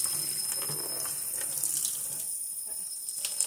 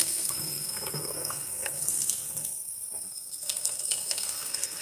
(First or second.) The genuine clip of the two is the first